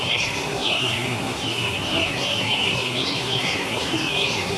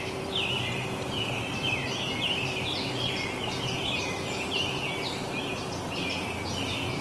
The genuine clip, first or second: second